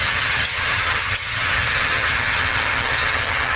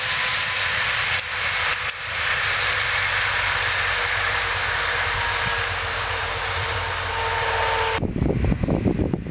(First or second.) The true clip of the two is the second